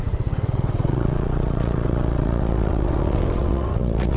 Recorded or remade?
remade